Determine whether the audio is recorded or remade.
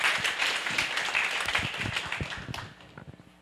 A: recorded